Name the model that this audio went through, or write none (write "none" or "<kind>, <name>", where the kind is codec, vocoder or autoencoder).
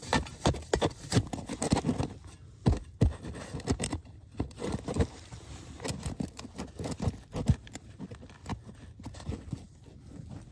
none